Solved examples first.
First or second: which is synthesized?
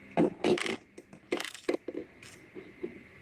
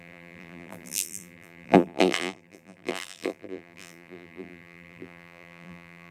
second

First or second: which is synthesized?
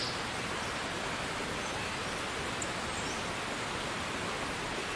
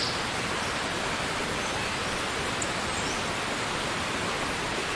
second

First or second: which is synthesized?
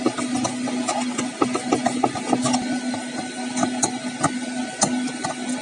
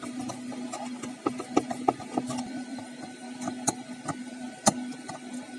second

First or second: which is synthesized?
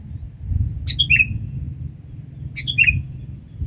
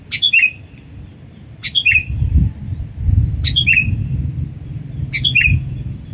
second